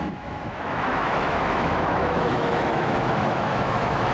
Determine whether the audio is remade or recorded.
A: remade